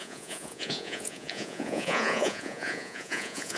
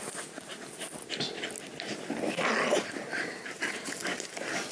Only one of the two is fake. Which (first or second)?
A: first